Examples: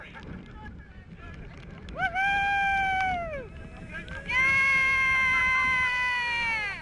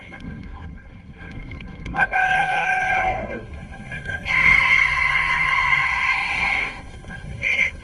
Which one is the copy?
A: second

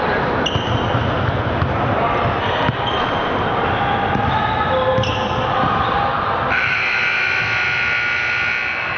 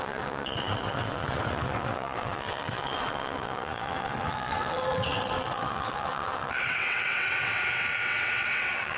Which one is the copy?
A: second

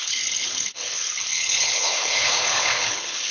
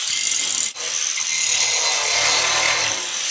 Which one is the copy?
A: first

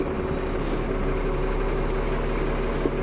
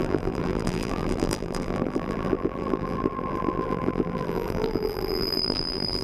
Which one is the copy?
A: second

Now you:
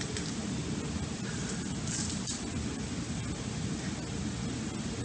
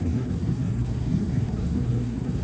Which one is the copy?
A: second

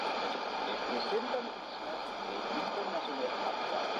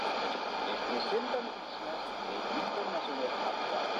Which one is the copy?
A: first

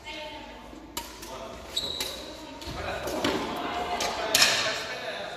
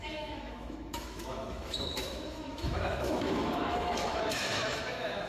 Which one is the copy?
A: second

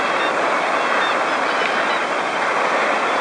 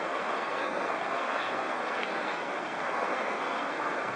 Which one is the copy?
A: second